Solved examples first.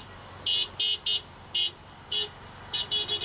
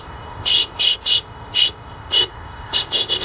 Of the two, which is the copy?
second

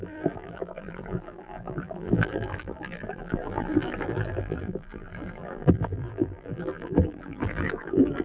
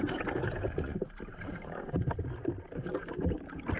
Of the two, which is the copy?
first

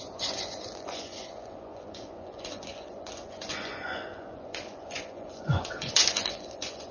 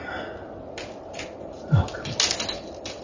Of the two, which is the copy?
first